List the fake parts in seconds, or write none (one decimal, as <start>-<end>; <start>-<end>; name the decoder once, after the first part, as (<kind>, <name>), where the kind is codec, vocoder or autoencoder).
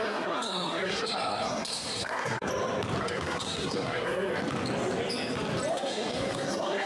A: 0.0-2.5 (codec, SNAC); 3.0-4.3; 5.7-6.9